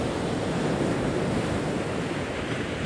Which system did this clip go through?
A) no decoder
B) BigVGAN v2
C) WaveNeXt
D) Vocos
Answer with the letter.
B